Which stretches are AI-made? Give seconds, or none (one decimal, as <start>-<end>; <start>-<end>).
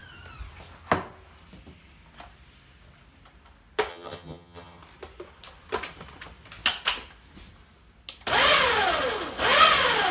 3.9-4.8